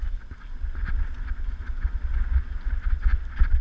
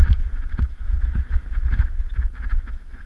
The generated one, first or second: second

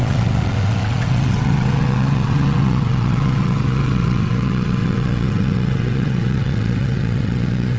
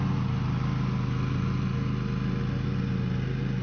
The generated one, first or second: first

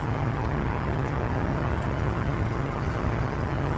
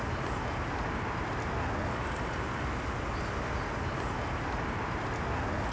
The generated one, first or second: first